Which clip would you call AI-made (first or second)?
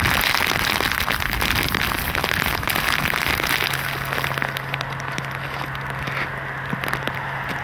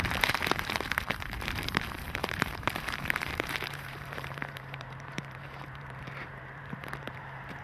second